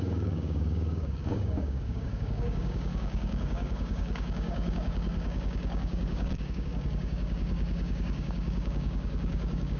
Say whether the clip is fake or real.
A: fake